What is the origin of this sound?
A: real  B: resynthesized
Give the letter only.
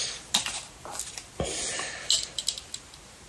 A